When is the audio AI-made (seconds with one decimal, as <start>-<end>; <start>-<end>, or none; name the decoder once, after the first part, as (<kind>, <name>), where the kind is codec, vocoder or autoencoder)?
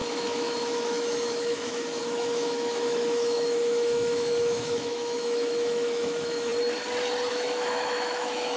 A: 0.0-6.5 (autoencoder, DAC-VAE); 7.3-8.6